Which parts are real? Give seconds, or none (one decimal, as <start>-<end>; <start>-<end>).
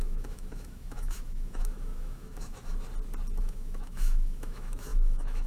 2.7-3.4